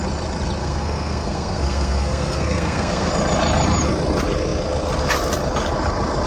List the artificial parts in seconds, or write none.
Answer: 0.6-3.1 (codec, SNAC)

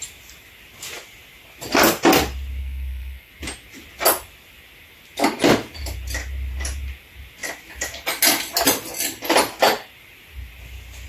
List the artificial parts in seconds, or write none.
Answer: 2.6-3.3 (codec, SNAC)

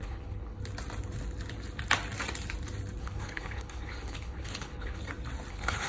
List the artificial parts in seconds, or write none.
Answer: 0.0-0.6 (codec, HILCodec); 3.0-5.0; 5.5-5.9

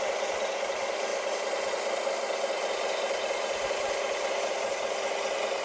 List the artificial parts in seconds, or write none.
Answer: none

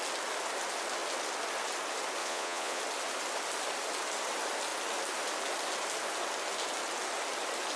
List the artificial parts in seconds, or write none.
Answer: 2.2-2.8 (vocoder, Vocos)

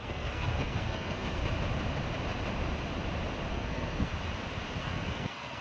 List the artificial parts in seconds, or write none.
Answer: 0.0-1.4 (codec, SNAC); 3.5-4.1; 4.8-5.6

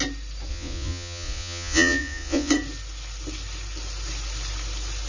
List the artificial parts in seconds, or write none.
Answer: 0.5-2.5 (vocoder, Vocos)

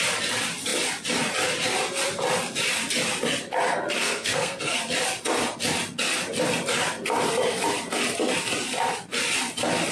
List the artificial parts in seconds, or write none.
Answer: 4.0-4.8 (codec, SNAC)